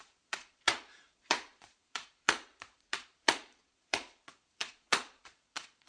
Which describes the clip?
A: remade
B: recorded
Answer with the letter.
A